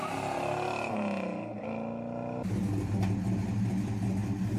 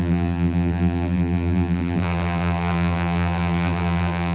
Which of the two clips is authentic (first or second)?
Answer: first